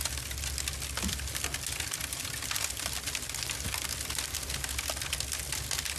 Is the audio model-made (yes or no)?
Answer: no